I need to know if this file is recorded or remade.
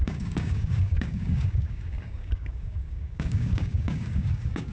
remade